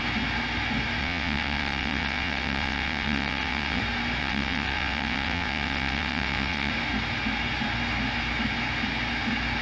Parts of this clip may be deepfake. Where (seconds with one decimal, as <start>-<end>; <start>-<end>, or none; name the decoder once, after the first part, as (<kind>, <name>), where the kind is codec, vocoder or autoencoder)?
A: 1.0-3.8 (vocoder, WaveNeXt); 4.2-6.7

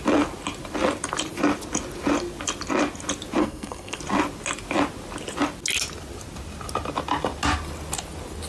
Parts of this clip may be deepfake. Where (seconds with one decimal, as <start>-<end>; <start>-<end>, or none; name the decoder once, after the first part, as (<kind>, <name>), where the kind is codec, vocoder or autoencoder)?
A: 3.4-4.0 (codec, SNAC)

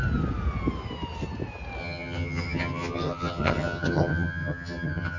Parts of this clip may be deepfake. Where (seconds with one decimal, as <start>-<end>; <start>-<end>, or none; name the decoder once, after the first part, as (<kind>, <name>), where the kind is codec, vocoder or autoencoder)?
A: 1.8-5.2 (vocoder, HiFi-GAN)

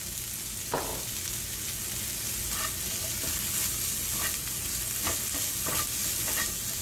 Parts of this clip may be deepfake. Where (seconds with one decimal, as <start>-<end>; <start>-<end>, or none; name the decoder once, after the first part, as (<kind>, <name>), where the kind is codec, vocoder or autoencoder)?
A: none

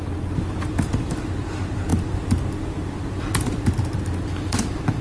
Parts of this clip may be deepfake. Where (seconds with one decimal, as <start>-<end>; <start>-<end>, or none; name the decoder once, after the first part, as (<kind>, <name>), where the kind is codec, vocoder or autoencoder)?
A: none

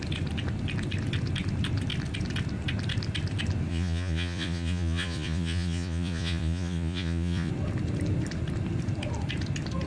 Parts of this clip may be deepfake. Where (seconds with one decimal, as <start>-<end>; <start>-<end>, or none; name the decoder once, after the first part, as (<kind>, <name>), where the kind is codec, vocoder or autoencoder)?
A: 3.7-7.5 (vocoder, Vocos)

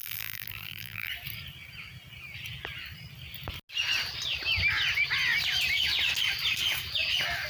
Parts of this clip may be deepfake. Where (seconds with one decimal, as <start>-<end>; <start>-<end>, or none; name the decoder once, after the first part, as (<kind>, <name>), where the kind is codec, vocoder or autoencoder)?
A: 0.0-1.1 (vocoder, BigVGAN v2)

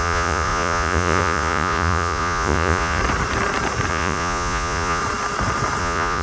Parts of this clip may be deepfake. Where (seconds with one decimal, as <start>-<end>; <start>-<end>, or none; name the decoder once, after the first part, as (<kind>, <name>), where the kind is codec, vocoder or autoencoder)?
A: 0.0-3.0 (vocoder, Vocos); 3.9-5.0; 5.8-6.2